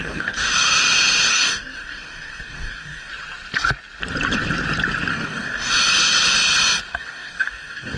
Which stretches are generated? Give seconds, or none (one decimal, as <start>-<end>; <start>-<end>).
0.0-0.5; 1.3-3.1; 5.1-5.7; 6.9-8.0